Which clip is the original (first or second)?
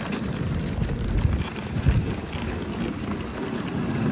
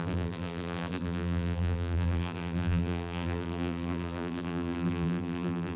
first